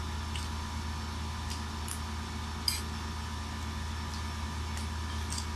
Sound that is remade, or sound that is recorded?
recorded